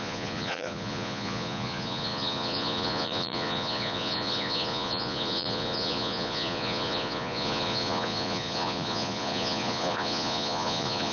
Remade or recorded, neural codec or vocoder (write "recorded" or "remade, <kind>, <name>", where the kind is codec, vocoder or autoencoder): remade, vocoder, Vocos